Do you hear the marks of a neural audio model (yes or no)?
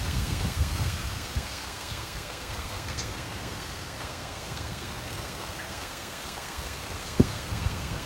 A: yes